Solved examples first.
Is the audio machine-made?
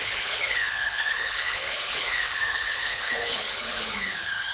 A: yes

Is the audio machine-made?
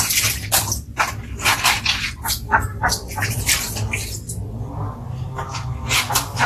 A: no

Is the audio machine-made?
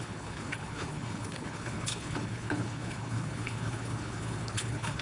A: yes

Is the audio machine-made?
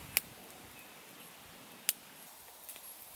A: no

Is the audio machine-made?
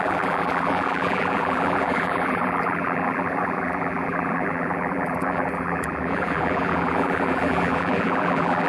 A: yes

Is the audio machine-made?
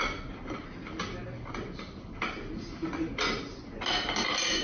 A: no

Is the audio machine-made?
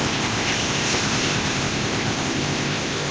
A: yes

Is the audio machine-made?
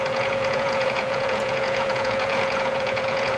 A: yes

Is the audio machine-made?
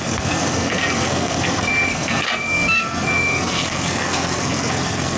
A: yes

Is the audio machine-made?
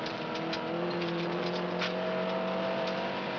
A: no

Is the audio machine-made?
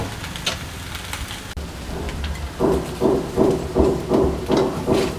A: no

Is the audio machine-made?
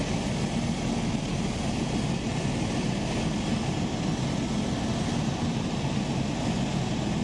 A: no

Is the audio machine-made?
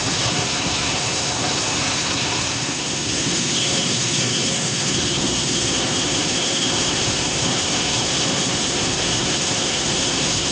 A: yes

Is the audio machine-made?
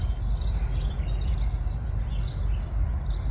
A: no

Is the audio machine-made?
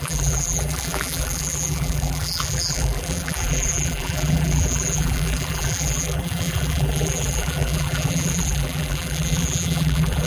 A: yes